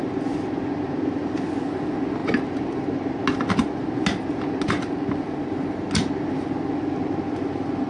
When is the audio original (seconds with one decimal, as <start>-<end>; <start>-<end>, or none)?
0.0-7.9